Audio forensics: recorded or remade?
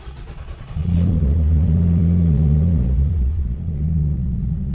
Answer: remade